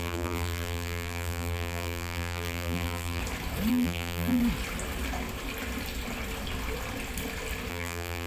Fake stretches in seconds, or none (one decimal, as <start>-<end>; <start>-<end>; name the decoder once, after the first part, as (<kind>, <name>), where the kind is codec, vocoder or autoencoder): 0.0-3.2 (vocoder, BigVGAN v2); 3.7-4.4; 7.7-8.3